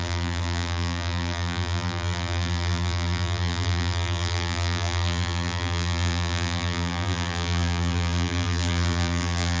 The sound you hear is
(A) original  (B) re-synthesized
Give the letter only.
B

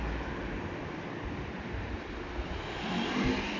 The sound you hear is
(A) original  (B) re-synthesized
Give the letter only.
A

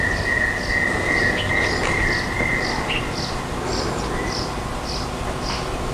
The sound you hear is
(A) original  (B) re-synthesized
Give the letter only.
A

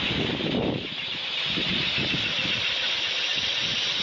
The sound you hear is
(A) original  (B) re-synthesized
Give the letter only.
A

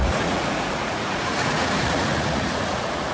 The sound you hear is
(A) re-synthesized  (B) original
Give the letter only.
A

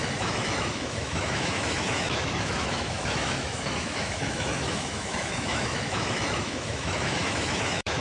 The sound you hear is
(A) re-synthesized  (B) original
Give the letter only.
A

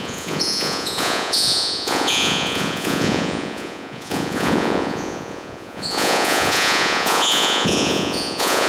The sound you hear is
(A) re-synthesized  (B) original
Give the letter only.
A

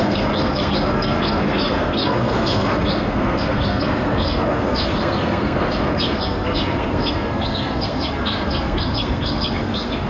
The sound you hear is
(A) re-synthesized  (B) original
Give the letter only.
A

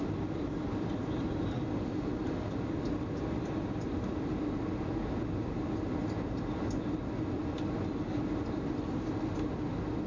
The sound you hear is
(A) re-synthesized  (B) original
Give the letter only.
B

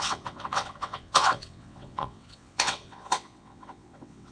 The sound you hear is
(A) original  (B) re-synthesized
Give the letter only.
B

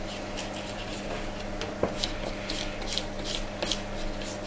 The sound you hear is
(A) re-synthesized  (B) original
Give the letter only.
B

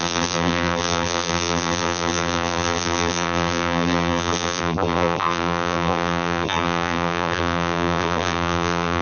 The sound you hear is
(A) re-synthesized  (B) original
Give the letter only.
A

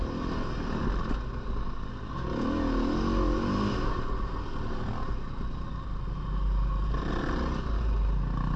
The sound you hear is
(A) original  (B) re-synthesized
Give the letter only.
A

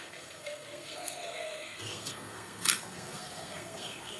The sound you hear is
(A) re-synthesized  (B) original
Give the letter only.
A